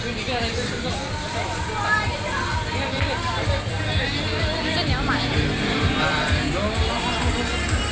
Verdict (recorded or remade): recorded